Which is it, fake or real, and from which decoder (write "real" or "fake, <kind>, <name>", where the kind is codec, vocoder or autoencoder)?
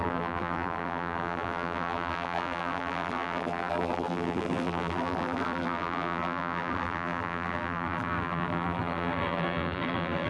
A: fake, vocoder, BigVGAN v2